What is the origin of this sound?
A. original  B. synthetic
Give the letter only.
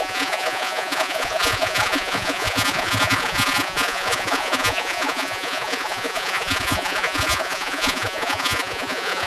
B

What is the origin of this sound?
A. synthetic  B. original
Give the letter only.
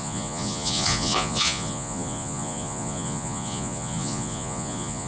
A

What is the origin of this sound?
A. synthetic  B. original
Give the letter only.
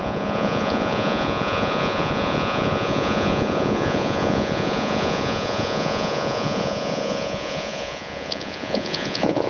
A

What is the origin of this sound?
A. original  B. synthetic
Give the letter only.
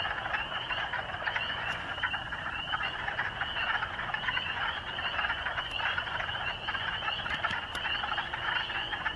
B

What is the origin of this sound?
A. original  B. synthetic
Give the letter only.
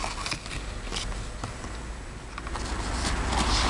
A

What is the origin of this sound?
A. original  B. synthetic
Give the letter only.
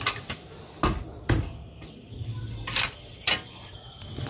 A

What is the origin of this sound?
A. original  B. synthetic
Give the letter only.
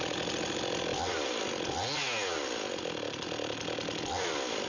A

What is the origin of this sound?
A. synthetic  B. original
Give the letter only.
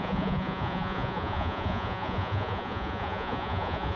A